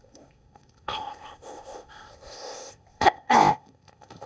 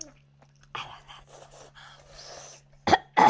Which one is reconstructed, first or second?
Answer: first